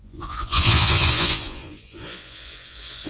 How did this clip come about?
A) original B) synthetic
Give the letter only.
B